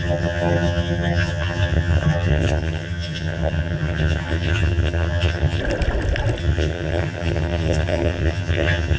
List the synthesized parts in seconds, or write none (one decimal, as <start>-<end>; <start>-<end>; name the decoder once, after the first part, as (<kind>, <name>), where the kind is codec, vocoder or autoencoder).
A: 0.0-5.6 (vocoder, HiFi-GAN); 6.4-9.0